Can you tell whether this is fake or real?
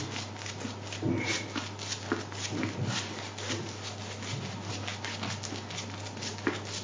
real